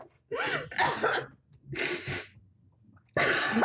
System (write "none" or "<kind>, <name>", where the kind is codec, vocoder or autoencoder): none